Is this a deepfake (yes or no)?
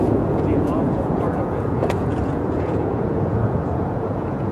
yes